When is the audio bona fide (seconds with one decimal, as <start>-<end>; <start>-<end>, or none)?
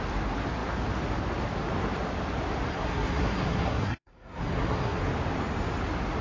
0.0-2.7; 5.0-6.2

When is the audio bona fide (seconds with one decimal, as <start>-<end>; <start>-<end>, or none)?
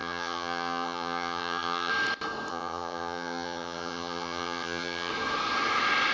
1.9-2.5; 5.1-6.1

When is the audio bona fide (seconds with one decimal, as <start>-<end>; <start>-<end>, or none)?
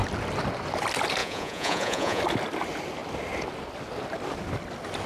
0.0-1.2; 2.2-5.1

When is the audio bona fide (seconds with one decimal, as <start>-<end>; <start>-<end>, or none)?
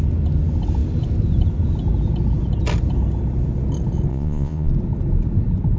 0.0-4.1; 4.7-5.8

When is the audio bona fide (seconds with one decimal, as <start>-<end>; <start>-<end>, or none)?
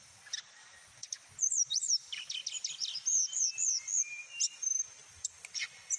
0.6-1.4; 3.9-5.0